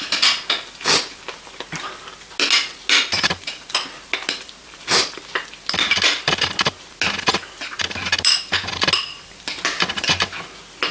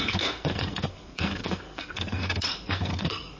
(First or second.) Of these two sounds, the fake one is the second